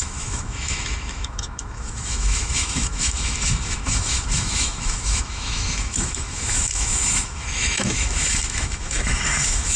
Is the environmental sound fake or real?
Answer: fake